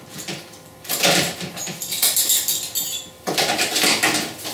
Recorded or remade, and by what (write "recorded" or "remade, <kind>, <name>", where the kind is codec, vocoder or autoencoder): recorded